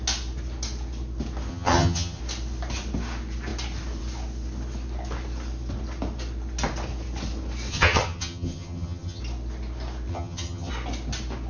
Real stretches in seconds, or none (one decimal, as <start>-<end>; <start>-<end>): 0.0-1.5; 2.2-7.7; 9.2-10.1; 10.7-11.5